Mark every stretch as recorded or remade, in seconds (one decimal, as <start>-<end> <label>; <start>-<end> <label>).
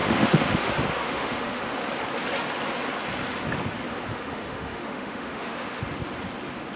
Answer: 0.0-1.6 remade; 1.6-4.1 recorded; 4.1-5.8 remade; 5.8-6.8 recorded